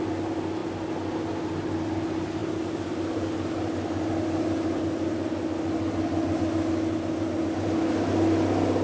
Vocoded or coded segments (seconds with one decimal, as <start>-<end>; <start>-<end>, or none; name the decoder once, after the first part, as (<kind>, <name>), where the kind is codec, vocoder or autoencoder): none

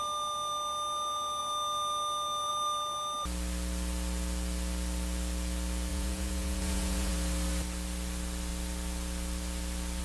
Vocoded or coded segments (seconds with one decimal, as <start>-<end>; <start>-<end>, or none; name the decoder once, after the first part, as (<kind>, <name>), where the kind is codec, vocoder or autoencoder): 5.9-7.1 (vocoder, Vocos)

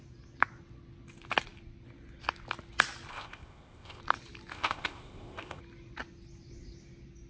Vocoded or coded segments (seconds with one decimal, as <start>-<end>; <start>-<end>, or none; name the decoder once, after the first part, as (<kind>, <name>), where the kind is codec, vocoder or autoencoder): 3.1-4.0 (codec, ZipCodec); 4.5-5.6

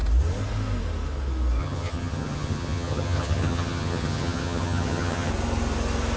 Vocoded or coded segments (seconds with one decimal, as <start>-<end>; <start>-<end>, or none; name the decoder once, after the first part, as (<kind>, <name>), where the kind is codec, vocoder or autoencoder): 1.6-5.3 (vocoder, HiFi-GAN)

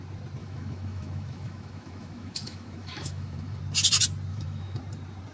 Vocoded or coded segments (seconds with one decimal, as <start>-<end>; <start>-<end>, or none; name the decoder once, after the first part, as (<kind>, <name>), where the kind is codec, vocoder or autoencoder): 0.4-3.6 (autoencoder, DAC-VAE); 4.3-4.8

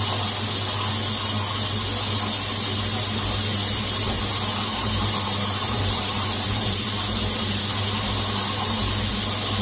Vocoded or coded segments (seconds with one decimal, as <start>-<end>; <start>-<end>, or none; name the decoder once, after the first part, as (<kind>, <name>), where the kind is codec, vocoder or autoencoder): 4.7-7.6 (vocoder, BigVGAN v2)